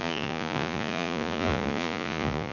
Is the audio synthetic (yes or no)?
yes